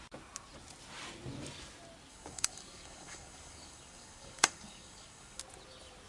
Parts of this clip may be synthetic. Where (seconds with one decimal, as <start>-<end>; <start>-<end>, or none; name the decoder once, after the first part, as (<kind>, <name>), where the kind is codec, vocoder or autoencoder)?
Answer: 2.1-5.4 (codec, DAC)